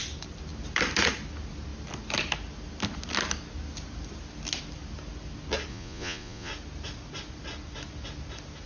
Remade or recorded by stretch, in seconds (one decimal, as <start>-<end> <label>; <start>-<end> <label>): 0.0-5.7 recorded; 5.7-6.5 remade; 6.5-8.7 recorded